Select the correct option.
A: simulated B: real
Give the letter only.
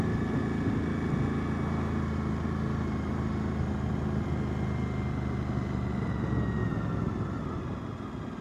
B